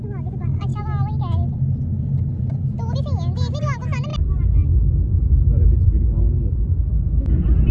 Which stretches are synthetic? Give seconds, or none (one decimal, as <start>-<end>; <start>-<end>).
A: none